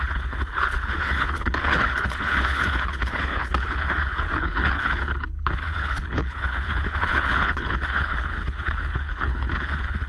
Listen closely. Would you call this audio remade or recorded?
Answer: remade